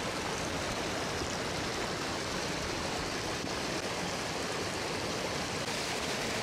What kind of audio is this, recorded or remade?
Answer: recorded